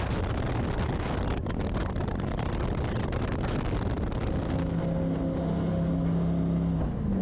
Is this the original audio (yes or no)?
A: yes